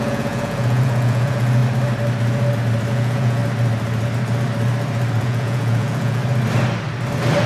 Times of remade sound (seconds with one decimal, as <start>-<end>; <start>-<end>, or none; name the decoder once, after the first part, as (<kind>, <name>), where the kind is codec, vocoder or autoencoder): 0.0-1.6 (vocoder, Vocos); 2.9-3.4; 5.2-6.2